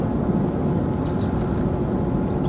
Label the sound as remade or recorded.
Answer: recorded